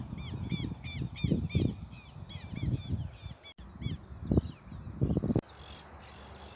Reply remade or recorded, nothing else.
recorded